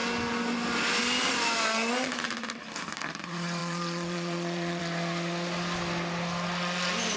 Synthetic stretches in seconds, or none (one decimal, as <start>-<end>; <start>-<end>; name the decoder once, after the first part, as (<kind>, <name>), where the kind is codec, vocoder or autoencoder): 3.6-4.8 (vocoder, Vocos)